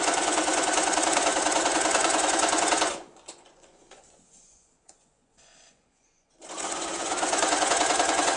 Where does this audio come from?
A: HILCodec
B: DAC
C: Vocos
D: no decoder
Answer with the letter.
C